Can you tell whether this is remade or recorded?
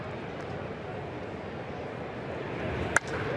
recorded